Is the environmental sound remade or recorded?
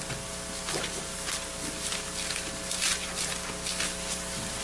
recorded